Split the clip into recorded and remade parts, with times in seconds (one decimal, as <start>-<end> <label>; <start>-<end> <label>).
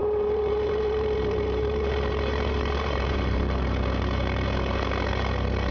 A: 0.0-3.4 remade; 3.4-5.7 recorded